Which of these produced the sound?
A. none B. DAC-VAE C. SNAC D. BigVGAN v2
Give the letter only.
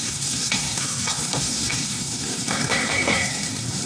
C